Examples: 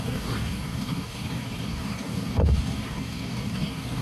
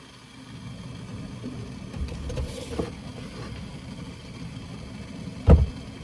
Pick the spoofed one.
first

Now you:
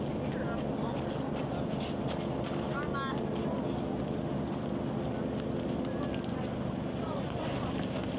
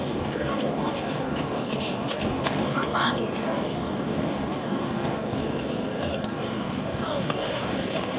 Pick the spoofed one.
second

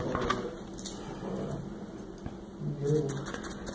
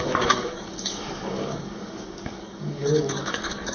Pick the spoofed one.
second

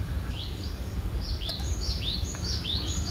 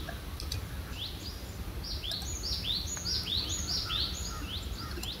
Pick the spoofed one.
first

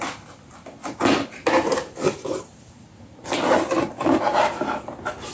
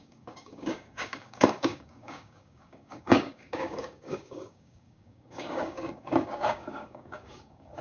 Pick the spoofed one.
second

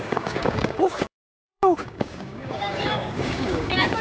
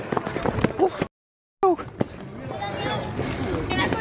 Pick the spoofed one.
first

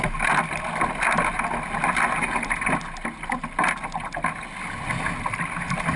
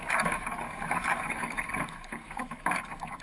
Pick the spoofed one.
second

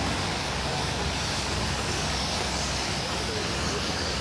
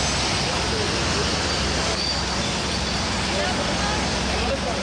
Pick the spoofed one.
first